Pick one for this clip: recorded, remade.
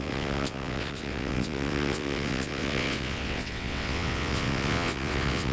remade